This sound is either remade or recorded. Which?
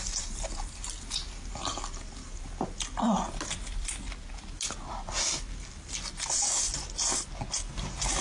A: recorded